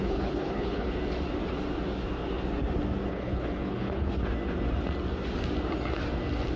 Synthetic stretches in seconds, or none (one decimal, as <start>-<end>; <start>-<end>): 0.0-1.0; 3.1-4.1